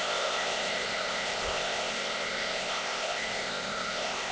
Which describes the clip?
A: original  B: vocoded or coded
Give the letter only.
B